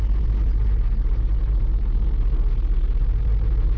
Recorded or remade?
recorded